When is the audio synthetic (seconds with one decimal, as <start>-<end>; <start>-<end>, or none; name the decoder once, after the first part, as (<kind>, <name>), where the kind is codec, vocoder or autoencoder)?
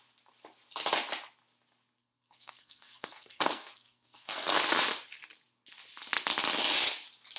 2.0-4.6 (codec, SNAC)